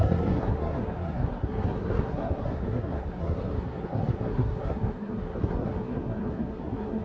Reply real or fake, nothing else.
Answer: fake